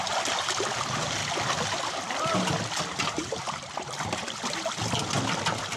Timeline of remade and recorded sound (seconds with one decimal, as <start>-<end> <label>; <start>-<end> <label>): 0.0-3.2 recorded; 3.2-4.6 remade; 4.6-5.8 recorded